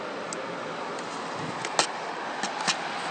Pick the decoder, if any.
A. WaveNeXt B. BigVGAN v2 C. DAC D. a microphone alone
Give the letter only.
D